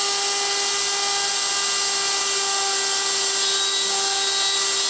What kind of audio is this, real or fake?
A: real